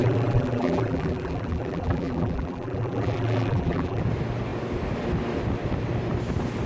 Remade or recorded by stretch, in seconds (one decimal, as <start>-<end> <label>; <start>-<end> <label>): 0.0-4.0 remade; 4.0-6.7 recorded